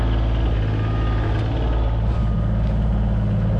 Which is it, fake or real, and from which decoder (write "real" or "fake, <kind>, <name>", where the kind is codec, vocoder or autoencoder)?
real